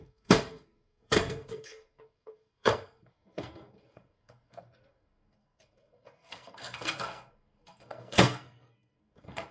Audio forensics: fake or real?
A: fake